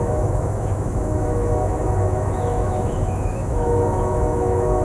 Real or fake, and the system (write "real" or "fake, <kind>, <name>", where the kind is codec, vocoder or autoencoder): fake, autoencoder, DAC-VAE